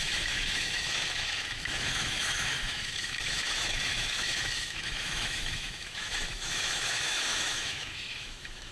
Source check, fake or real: fake